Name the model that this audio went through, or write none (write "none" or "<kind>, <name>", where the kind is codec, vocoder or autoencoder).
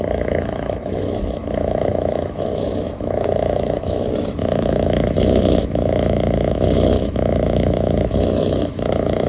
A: autoencoder, DAC-VAE